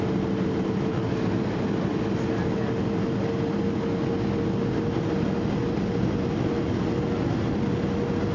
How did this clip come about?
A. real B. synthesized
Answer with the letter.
A